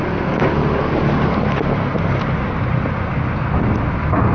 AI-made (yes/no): no